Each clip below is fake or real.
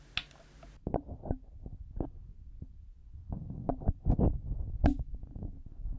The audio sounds real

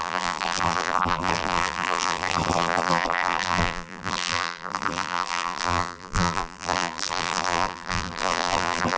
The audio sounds fake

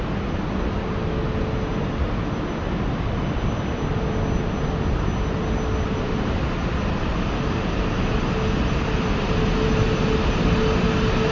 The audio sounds real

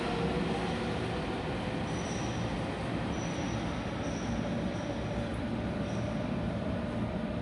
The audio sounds real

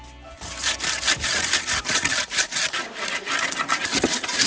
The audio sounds fake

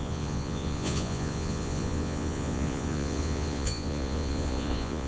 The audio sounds fake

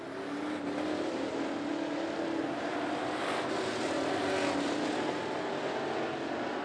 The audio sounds real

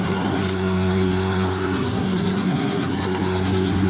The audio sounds fake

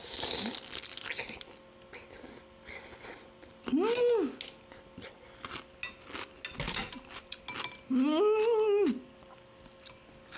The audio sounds real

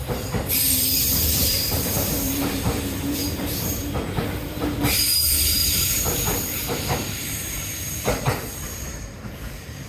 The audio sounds fake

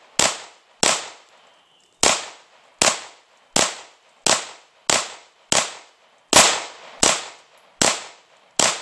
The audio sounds real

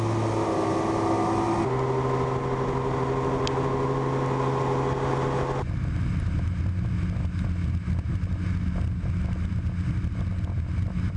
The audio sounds real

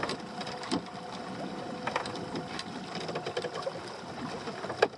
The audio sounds real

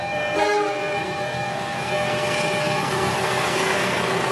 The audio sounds fake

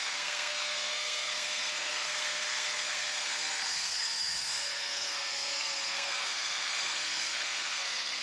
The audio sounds fake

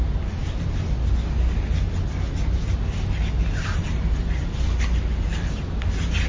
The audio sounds real